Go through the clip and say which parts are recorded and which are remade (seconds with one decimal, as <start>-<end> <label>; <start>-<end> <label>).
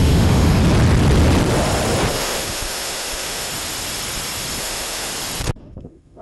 0.0-0.6 remade; 0.6-2.1 recorded; 2.1-3.5 remade; 3.5-4.6 recorded; 4.6-5.1 remade; 5.1-5.6 recorded; 5.6-6.2 remade